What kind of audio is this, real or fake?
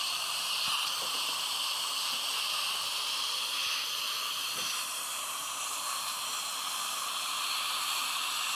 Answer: fake